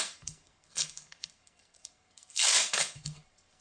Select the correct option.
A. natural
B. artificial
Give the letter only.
B